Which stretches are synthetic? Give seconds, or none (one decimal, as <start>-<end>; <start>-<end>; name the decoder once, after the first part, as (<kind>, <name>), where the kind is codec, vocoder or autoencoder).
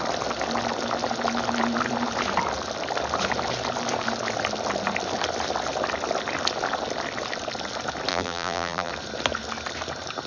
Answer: 8.1-8.9 (vocoder, BigVGAN v2)